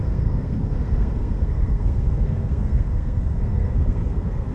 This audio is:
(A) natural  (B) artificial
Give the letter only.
B